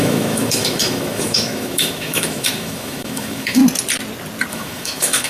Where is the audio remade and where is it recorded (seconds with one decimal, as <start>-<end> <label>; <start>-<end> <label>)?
0.0-3.6 remade; 3.6-4.5 recorded; 4.5-5.3 remade